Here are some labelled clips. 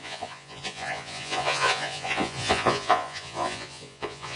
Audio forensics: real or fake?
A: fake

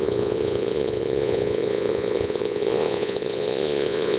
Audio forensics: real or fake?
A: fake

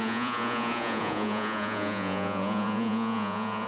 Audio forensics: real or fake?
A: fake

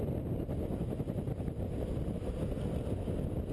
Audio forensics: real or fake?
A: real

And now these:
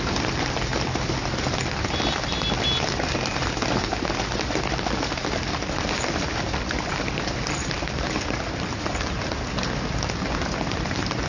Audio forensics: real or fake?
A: real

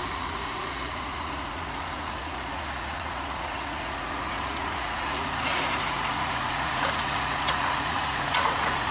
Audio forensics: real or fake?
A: fake